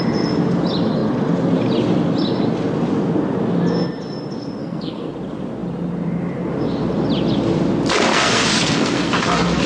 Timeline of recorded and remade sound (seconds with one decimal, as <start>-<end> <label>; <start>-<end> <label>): 0.0-4.6 recorded; 4.6-5.1 remade; 5.1-8.1 recorded; 8.1-9.7 remade